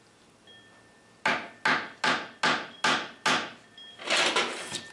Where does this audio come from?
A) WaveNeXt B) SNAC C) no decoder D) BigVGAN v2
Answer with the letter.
C